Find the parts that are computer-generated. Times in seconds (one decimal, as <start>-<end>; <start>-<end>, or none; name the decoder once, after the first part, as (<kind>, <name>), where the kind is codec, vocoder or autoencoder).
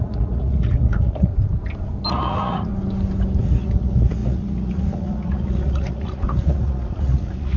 0.0-1.3 (vocoder, Vocos); 2.1-2.7; 3.4-7.6